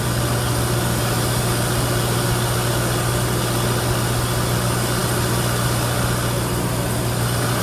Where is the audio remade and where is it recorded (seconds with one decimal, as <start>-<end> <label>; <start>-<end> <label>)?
0.0-7.6 recorded